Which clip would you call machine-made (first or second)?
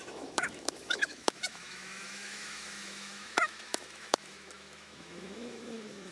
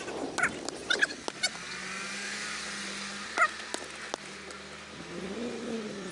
first